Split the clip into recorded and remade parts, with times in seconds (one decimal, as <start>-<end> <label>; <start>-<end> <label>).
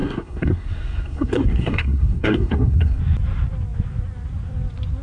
0.0-3.0 remade; 3.0-5.0 recorded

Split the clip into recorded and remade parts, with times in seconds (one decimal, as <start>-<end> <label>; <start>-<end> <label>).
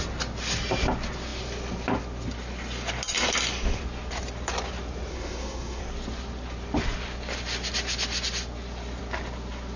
0.0-5.1 recorded; 5.1-5.8 remade; 5.8-9.8 recorded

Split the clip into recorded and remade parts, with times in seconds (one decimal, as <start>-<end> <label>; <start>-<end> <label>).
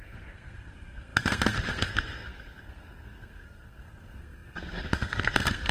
0.0-5.7 remade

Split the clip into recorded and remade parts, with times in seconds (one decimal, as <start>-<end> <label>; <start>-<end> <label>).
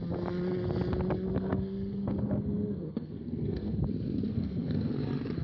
0.0-1.3 recorded; 1.3-3.8 remade; 3.8-4.3 recorded; 4.3-4.9 remade; 4.9-5.4 recorded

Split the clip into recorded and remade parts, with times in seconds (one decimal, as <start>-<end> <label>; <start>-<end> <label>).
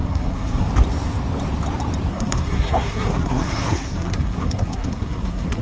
0.0-0.7 remade; 0.7-2.1 recorded; 2.1-5.6 remade